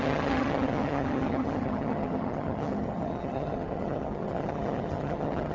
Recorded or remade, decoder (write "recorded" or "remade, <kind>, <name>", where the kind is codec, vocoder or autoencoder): remade, vocoder, HiFi-GAN